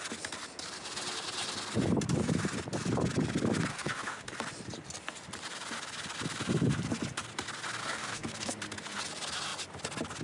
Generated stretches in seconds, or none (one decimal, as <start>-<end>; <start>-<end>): 3.7-4.3; 7.8-8.5